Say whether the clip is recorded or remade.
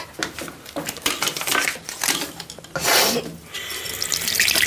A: recorded